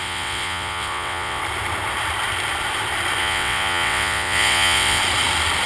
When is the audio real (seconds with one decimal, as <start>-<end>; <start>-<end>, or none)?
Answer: 1.4-3.2; 5.0-5.7